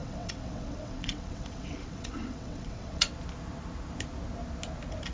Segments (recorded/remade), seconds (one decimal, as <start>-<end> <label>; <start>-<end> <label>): 0.0-3.1 remade; 3.1-5.1 recorded